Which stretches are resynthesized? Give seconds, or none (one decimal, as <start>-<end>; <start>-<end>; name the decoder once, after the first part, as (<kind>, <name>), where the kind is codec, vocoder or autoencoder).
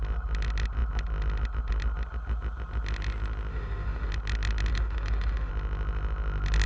3.5-4.1 (autoencoder, DAC-VAE); 4.7-5.5